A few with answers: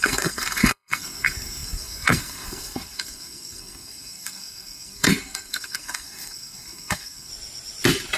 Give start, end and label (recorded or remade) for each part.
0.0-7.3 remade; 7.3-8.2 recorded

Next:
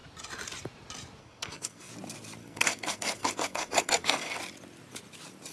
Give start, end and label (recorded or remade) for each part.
0.0-1.2 recorded; 1.2-1.9 remade; 1.9-2.4 recorded; 2.4-4.4 remade; 4.4-5.5 recorded

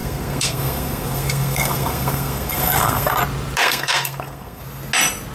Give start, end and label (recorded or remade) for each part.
0.0-3.2 remade; 3.2-3.6 recorded; 3.6-4.6 remade; 4.6-5.3 recorded

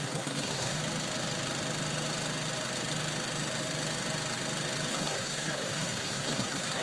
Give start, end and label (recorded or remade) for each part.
0.0-0.8 remade; 0.8-4.9 recorded; 4.9-6.8 remade